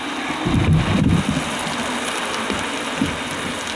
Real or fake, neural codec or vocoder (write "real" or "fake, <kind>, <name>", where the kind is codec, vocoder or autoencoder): real